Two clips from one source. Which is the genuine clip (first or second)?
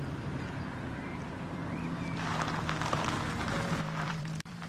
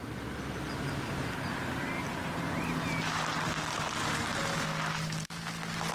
second